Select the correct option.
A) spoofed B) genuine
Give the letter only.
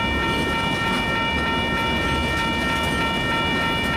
B